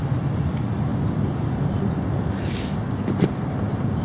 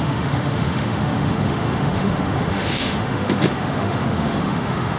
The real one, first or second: first